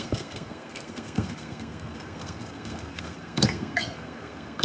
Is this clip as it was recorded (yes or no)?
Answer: no